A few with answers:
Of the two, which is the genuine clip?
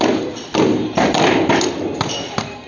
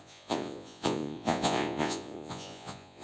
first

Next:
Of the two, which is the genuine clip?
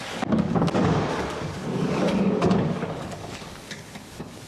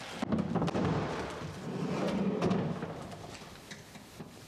second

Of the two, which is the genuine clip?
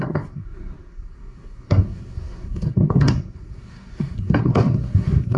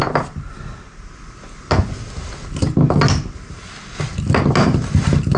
second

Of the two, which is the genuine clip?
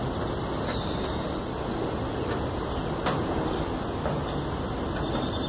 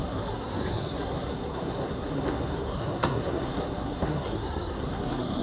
first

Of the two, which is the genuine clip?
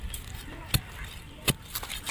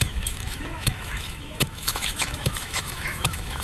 first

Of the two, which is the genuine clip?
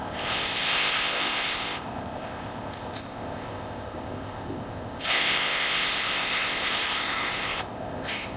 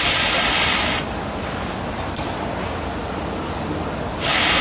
second